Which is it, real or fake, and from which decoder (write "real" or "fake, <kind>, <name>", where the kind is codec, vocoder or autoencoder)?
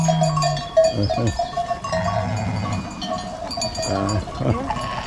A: real